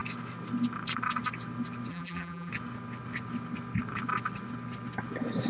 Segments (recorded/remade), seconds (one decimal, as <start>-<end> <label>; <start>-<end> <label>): 0.0-1.9 recorded; 1.9-2.5 remade; 2.5-5.5 recorded